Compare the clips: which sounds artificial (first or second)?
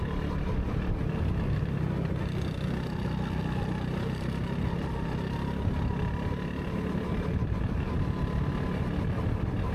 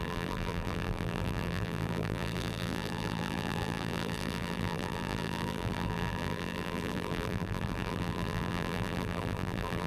second